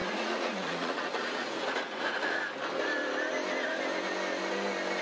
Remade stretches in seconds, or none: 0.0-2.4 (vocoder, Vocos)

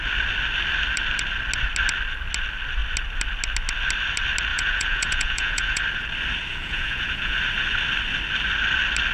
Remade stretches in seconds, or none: 4.5-5.8 (vocoder, Vocos); 6.5-7.4

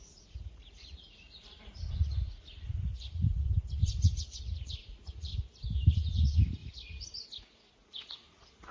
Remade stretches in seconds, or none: 0.0-5.3 (vocoder, Vocos); 5.9-6.6; 7.4-8.7

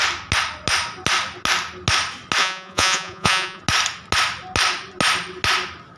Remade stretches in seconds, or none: 2.4-3.6 (vocoder, Vocos)